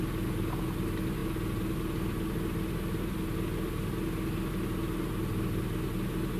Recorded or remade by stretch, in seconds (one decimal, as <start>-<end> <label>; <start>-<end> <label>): 0.0-6.4 recorded